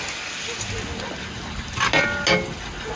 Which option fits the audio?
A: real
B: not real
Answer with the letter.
A